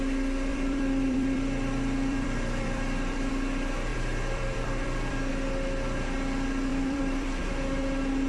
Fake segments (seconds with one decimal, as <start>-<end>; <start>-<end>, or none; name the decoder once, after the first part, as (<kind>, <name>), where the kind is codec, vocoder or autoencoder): 0.5-3.3 (vocoder, BigVGAN v2); 3.9-5.3; 6.7-7.5